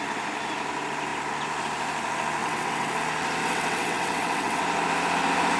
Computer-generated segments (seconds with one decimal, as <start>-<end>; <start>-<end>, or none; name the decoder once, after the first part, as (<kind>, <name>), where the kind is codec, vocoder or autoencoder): 2.4-3.0 (vocoder, WaveNeXt); 3.4-4.6